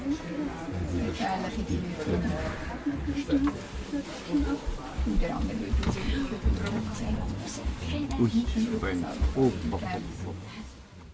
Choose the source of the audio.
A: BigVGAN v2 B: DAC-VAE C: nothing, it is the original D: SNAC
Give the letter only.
C